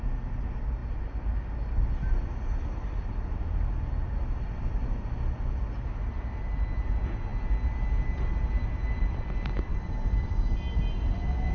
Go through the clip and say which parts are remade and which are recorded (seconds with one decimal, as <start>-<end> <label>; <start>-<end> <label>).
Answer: 0.0-11.5 recorded